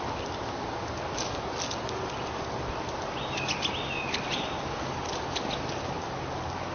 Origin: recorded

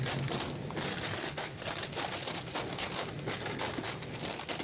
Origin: recorded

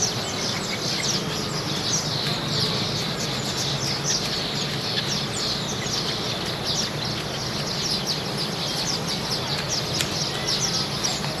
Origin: recorded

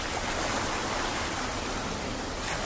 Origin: recorded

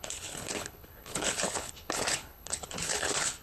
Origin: remade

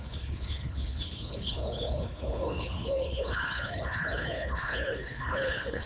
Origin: remade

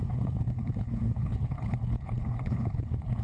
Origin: remade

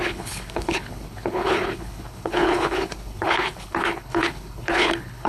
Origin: remade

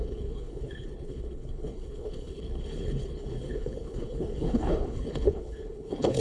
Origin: remade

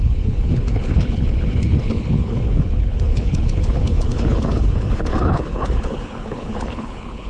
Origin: remade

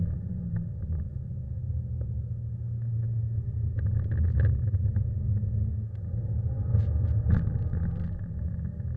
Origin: recorded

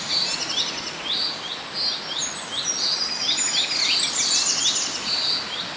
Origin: recorded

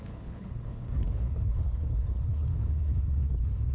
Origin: remade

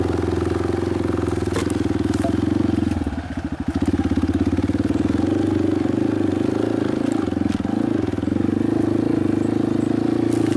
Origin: recorded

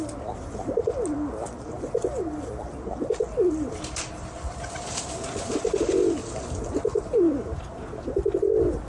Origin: recorded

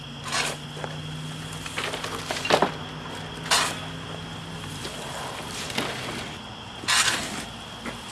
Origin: recorded